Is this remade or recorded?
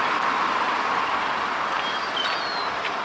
recorded